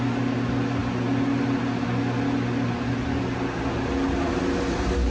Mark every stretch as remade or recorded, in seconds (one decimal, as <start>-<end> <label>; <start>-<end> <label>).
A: 0.0-5.1 recorded